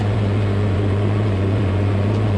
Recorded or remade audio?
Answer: remade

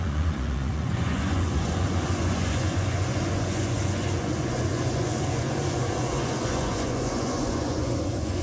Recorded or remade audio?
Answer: remade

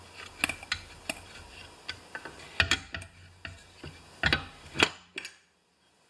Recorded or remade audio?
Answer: recorded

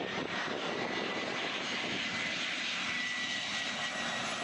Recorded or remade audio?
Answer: recorded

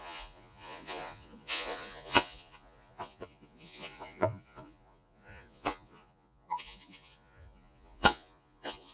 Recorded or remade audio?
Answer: remade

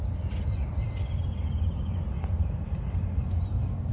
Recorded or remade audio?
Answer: recorded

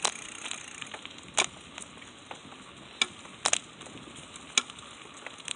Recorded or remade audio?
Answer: recorded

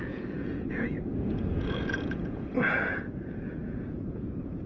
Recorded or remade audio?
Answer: remade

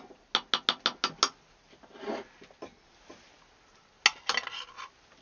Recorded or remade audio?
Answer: recorded